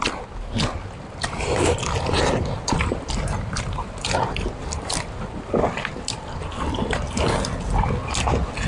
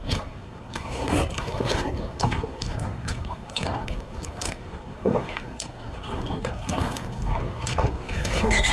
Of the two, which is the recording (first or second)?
first